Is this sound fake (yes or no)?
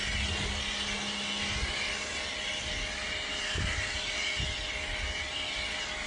no